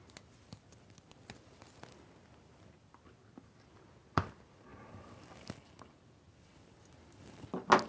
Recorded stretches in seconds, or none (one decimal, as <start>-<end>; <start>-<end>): 0.0-7.9

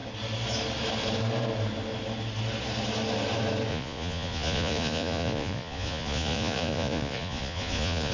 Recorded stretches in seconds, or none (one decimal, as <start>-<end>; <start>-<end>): 0.0-3.7